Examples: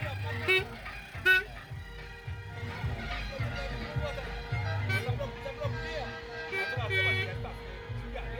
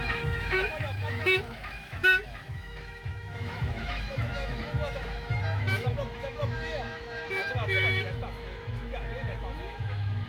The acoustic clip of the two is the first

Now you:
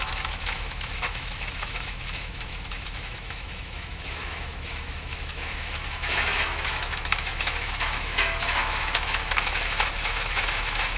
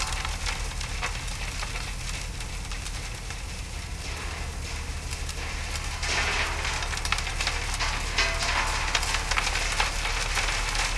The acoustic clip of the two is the second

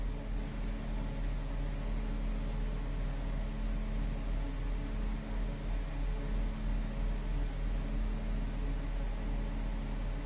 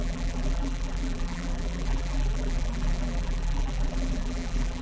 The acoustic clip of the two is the first